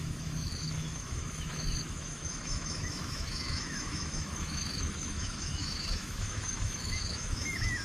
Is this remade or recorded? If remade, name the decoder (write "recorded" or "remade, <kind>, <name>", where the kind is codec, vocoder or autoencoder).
remade, autoencoder, DAC-VAE